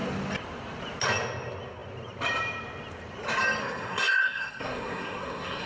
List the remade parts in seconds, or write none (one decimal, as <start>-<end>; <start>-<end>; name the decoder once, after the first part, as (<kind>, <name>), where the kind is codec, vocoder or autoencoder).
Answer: 3.6-5.7 (codec, SNAC)

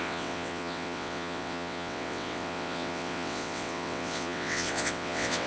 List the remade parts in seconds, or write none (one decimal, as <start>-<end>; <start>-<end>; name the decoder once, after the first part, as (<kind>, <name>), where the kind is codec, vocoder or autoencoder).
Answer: 0.0-5.5 (vocoder, WaveNeXt)

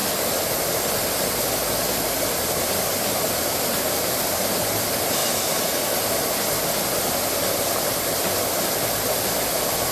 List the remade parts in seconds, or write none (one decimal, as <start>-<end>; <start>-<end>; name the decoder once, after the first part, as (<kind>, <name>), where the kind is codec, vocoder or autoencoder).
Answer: 0.0-5.2 (vocoder, BigVGAN v2); 8.9-9.9

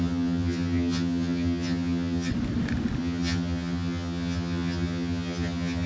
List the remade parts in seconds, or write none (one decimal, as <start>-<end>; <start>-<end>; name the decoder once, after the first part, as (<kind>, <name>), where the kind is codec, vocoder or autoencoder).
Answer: 0.0-2.3 (vocoder, HiFi-GAN); 3.0-5.9